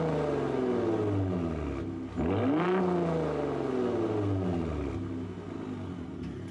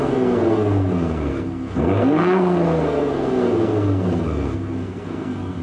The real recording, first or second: first